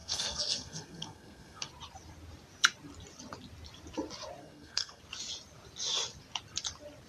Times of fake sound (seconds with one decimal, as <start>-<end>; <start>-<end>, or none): 0.0-1.7; 4.4-5.0